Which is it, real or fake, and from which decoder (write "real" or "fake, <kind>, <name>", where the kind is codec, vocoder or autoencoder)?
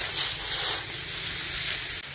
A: real